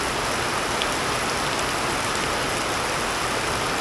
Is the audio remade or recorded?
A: recorded